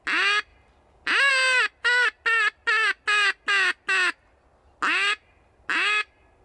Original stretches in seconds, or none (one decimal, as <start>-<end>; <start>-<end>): 0.0-6.4